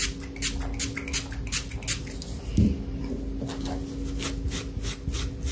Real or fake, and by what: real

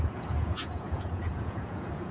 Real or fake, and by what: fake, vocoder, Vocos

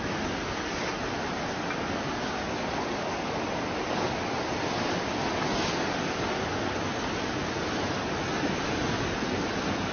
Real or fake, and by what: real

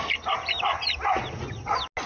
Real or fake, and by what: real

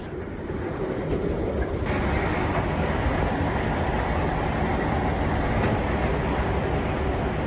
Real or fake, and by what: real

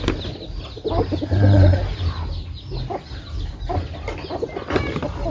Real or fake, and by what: real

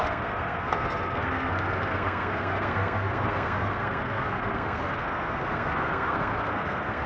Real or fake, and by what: fake, codec, SNAC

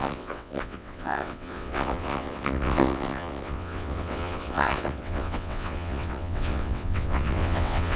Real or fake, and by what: fake, vocoder, WaveNeXt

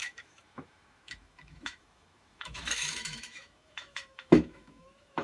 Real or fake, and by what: fake, autoencoder, DAC-VAE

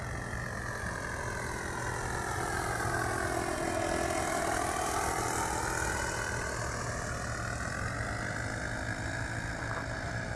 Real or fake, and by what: real